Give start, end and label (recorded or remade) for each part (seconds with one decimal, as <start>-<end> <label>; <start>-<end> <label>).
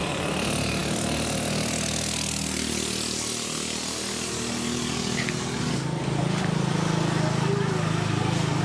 0.0-8.6 recorded